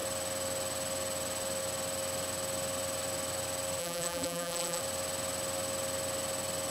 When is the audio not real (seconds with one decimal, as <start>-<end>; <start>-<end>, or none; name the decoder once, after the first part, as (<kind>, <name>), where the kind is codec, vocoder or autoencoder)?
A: 3.8-4.8 (vocoder, BigVGAN v2)

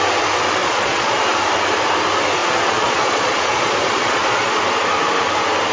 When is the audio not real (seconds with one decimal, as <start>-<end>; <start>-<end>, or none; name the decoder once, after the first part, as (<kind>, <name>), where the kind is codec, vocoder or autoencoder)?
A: 0.6-1.2 (vocoder, Vocos); 2.4-4.6

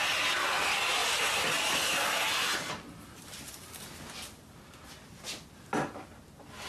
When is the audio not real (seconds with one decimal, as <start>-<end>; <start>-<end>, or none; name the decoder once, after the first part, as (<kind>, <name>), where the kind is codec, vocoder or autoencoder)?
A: none

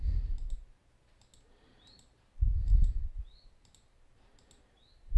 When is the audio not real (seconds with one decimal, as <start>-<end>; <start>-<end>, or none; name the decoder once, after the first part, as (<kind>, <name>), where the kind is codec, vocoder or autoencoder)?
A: none

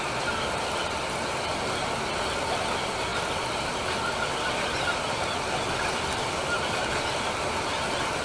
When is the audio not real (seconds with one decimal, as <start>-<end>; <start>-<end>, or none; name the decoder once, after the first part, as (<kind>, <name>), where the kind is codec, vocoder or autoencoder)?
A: none

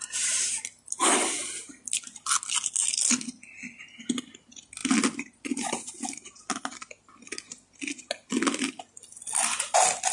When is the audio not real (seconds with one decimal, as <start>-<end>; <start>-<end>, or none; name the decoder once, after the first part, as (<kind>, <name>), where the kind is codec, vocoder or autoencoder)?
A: none